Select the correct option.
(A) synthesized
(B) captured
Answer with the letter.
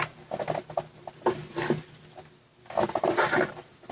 B